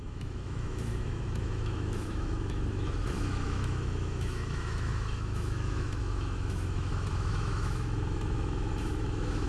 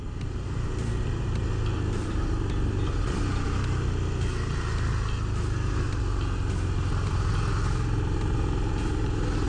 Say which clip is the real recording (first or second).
second